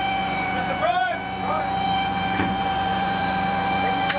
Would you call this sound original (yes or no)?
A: no